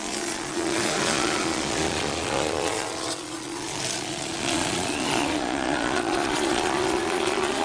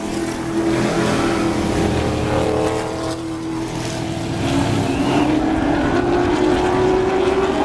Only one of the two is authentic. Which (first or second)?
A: second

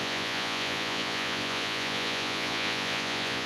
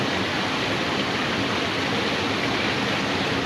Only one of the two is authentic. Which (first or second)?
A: second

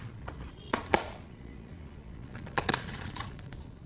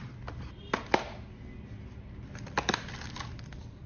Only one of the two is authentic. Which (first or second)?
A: second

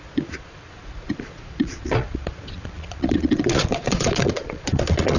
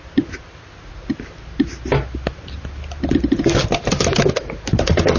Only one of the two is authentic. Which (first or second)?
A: second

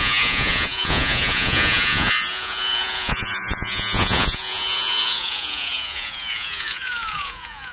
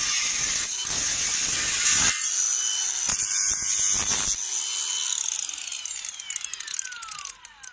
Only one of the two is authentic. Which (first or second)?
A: second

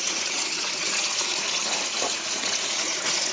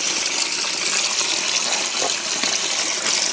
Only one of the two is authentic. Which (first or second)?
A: second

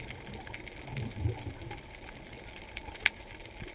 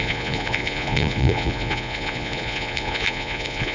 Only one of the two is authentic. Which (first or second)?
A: first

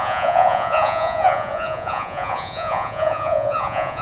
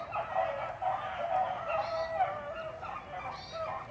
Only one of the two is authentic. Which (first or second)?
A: second